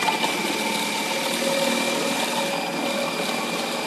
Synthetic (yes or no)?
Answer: no